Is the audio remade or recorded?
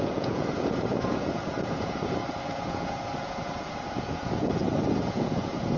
remade